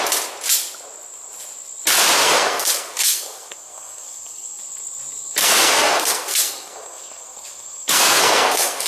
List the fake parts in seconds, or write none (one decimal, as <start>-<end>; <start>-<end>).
2.2-4.6; 5.4-8.9